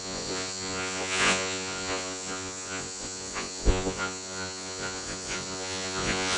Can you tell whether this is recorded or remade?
remade